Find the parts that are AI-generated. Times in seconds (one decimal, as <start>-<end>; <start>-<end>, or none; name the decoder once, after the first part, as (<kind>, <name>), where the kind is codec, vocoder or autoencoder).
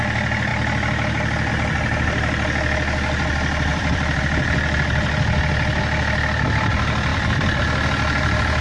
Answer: 3.7-4.2 (vocoder, BigVGAN v2); 7.1-7.6